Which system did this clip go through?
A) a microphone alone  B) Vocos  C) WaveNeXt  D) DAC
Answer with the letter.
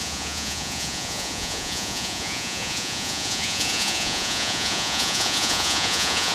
B